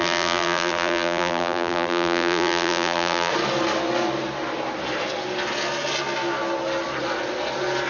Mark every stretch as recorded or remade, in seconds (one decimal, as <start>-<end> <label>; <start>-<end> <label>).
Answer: 0.0-3.3 remade; 3.3-7.9 recorded